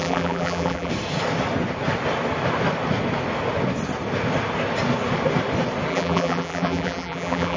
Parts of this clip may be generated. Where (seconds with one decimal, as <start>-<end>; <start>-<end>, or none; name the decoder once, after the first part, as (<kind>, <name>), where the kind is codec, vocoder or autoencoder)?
0.0-0.9 (vocoder, BigVGAN v2); 5.9-7.6